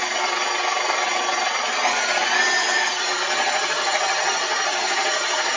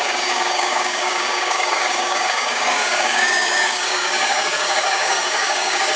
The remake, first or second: second